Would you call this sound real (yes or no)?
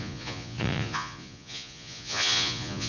no